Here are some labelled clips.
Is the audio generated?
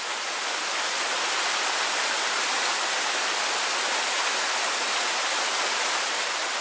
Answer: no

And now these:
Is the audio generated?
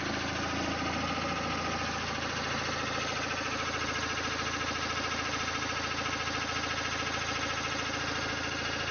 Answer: no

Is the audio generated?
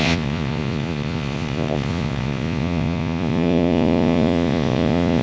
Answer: yes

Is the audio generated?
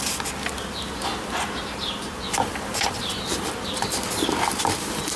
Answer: no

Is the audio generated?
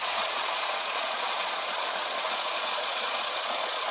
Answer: yes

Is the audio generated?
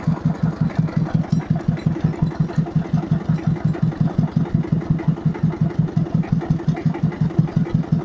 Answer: no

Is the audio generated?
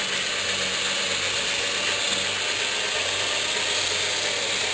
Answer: no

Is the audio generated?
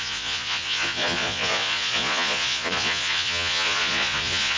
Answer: yes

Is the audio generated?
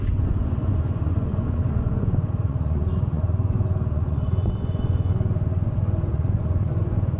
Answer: yes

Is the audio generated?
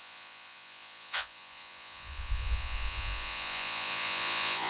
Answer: yes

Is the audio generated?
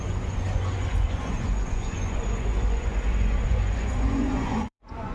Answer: yes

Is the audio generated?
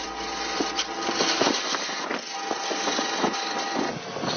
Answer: no